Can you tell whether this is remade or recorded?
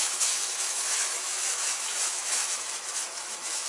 remade